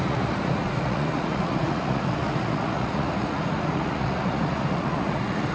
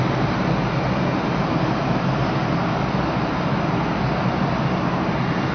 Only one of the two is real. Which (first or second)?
second